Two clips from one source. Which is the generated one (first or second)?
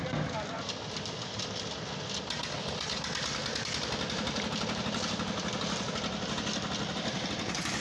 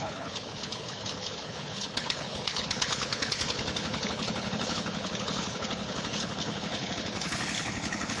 second